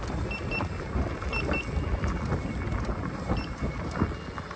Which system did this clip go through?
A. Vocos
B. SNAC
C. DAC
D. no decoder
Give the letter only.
D